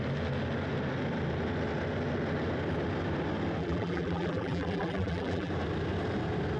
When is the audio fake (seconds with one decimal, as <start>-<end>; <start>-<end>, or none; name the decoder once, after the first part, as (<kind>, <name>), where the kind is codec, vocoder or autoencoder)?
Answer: 3.6-5.5 (vocoder, BigVGAN v2)